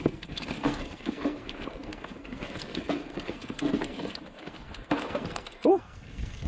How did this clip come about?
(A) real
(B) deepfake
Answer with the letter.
B